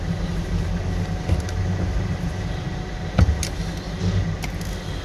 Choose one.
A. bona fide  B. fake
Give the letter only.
A